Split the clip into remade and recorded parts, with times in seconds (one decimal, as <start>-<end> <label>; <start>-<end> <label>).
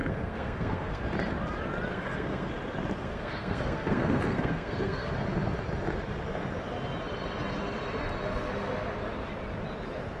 0.0-1.0 remade; 1.0-1.9 recorded; 1.9-2.5 remade; 2.5-3.0 recorded; 3.0-5.1 remade; 5.1-10.2 recorded